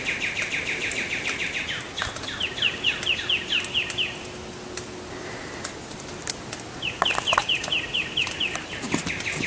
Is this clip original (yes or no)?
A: yes